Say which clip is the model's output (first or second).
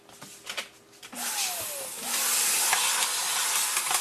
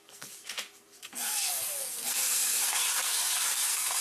second